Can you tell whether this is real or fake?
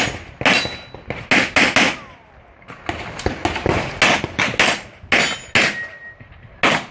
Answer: real